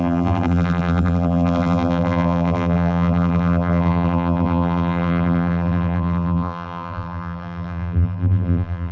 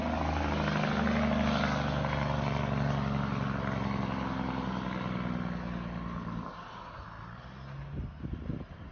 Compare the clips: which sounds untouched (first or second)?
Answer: second